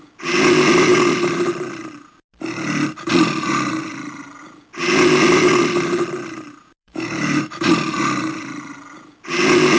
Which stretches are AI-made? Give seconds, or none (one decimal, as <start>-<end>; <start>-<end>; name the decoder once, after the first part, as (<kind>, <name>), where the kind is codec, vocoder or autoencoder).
6.8-7.7 (autoencoder, DAC-VAE)